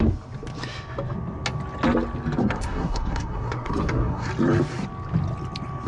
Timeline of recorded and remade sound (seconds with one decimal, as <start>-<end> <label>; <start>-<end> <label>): 0.0-2.4 recorded; 2.4-4.3 remade; 4.3-5.9 recorded